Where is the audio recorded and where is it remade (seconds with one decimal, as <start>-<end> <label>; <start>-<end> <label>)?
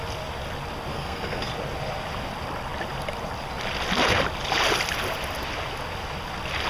0.0-0.9 recorded; 0.9-1.5 remade; 1.5-6.7 recorded